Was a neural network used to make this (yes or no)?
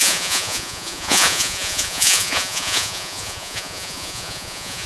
yes